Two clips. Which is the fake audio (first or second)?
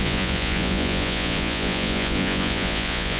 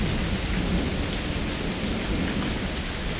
first